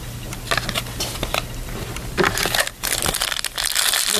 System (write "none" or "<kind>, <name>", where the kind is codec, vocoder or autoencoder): none